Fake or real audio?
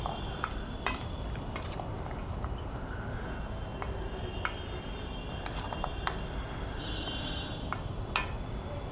real